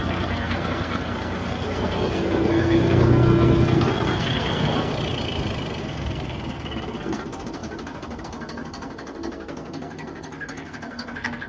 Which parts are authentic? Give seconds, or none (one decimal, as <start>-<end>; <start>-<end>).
4.9-5.8